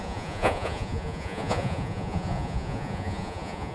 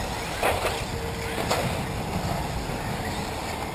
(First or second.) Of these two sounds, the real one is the second